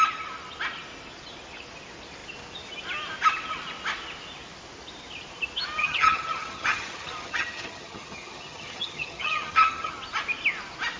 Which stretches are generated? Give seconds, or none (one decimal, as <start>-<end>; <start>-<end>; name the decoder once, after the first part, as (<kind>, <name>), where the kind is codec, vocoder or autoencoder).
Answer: 5.8-9.9 (vocoder, HiFi-GAN)